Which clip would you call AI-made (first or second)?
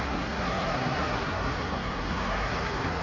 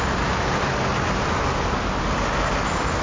first